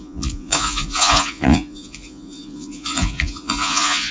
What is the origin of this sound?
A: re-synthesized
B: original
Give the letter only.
A